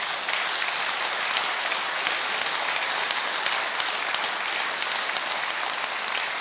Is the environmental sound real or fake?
real